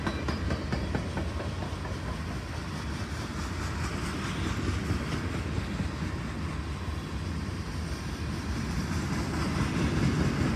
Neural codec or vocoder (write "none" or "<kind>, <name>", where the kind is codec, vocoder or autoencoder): none